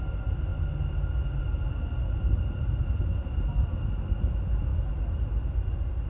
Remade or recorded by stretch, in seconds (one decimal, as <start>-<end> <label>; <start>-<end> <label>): 0.0-6.1 recorded